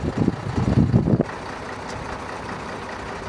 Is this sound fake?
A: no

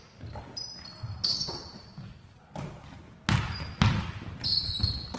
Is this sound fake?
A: no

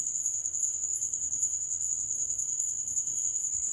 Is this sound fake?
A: yes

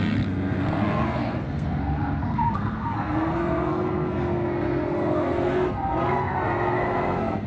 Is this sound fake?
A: yes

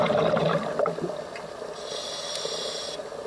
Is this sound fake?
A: no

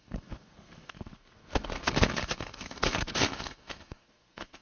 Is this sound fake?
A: yes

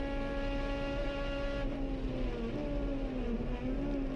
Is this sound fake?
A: no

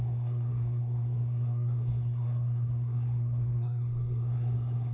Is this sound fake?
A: yes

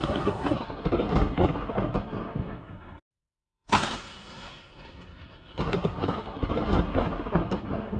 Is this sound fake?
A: yes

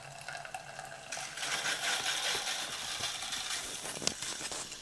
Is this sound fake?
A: no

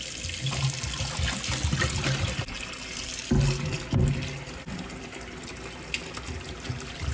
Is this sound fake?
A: no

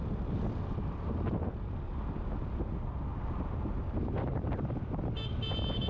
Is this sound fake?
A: no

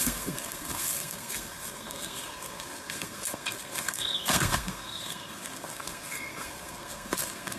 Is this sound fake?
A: yes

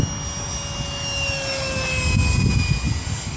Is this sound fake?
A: no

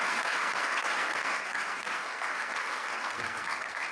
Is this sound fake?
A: yes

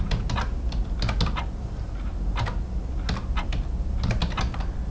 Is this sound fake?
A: no